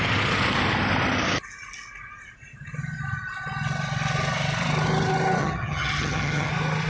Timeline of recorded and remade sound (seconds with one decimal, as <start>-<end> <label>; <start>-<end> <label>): 0.0-5.4 recorded; 5.4-6.5 remade; 6.5-6.9 recorded